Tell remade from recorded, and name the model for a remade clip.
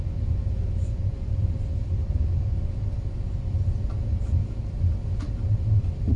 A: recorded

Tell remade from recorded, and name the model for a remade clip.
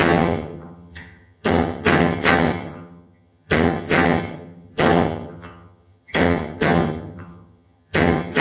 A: remade, vocoder, HiFi-GAN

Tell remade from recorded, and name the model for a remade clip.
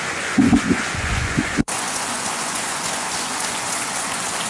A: remade, vocoder, Vocos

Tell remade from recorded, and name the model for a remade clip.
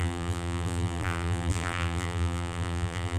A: remade, vocoder, BigVGAN v2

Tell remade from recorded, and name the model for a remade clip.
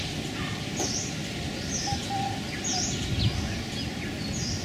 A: recorded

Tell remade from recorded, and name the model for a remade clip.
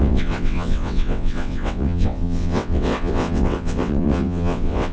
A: remade, vocoder, WaveNeXt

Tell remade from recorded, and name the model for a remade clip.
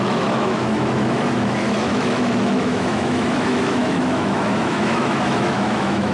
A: remade, autoencoder, DAC-VAE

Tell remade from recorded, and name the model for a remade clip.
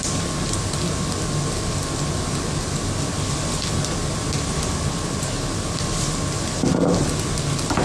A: recorded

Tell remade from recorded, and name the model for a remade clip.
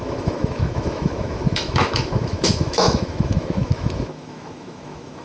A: remade, autoencoder, DAC-VAE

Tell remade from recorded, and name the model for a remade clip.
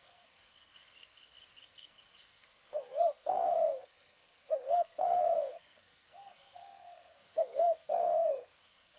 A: remade, codec, SNAC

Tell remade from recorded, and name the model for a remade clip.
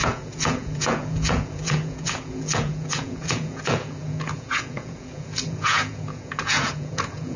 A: remade, vocoder, Vocos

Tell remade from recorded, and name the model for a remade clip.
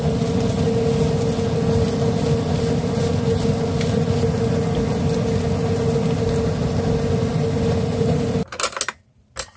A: recorded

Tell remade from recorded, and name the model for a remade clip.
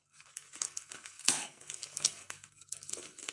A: remade, codec, SNAC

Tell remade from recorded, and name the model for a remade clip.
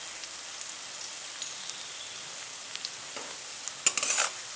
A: recorded